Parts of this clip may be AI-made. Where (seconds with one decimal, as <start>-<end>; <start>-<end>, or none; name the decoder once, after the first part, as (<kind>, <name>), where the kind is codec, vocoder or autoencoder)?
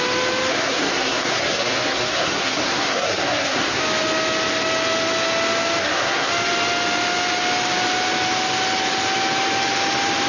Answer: 0.5-3.8 (codec, SNAC); 5.8-6.3